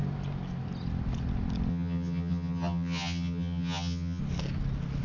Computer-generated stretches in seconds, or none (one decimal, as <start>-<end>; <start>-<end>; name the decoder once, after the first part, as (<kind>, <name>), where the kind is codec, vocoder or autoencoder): 1.7-4.2 (vocoder, HiFi-GAN)